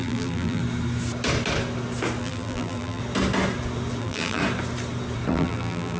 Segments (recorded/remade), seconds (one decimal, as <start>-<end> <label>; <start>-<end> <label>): 0.0-0.6 remade; 0.6-2.2 recorded; 2.2-3.0 remade; 3.0-4.0 recorded; 4.0-4.4 remade; 4.4-5.3 recorded; 5.3-6.0 remade